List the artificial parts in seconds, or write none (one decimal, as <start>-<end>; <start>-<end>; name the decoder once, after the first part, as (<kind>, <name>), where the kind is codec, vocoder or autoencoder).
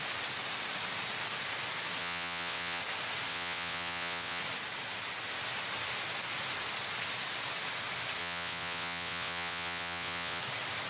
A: 2.0-2.8 (vocoder, WaveNeXt); 3.3-4.4; 8.2-10.4